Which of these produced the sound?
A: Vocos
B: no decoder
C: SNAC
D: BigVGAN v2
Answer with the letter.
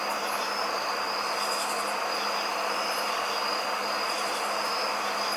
B